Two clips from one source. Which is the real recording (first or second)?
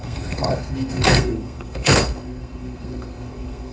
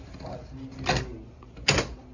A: second